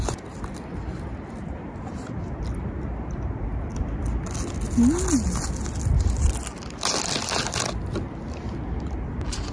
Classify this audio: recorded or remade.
recorded